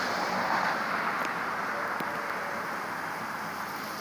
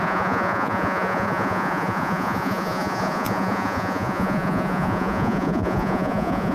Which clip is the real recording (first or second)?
first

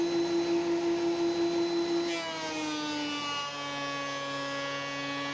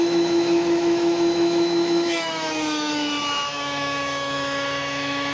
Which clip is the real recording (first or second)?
first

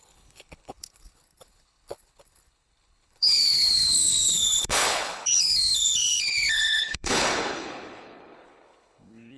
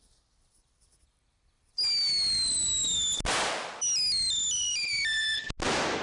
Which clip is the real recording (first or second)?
second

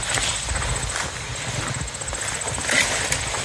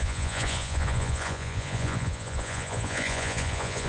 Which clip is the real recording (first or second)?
first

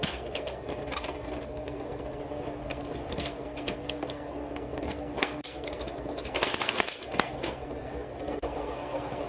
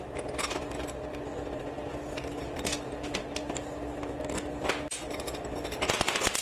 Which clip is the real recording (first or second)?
second